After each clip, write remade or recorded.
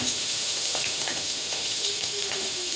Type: remade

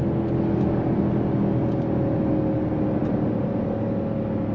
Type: recorded